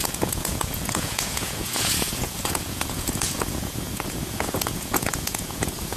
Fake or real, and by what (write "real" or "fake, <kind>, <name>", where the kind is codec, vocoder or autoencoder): fake, vocoder, Vocos